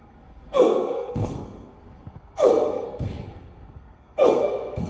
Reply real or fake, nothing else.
fake